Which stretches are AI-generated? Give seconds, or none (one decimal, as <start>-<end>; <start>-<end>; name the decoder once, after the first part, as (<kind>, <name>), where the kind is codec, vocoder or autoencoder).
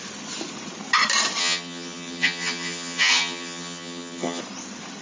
1.4-4.4 (vocoder, HiFi-GAN)